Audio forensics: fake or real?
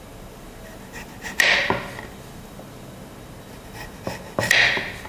real